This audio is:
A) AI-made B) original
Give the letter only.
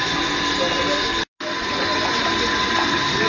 B